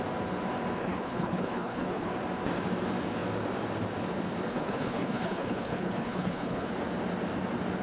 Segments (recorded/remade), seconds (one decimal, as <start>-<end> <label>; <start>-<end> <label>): 0.0-0.8 recorded; 0.8-2.1 remade; 2.1-4.5 recorded; 4.5-6.7 remade; 6.7-7.8 recorded